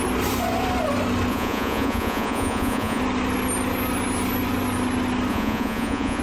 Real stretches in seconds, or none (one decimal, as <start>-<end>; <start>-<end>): 0.0-1.3; 3.0-5.3